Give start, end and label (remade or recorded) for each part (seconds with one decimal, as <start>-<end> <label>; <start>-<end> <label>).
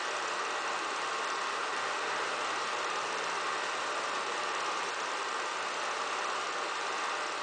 0.0-7.4 recorded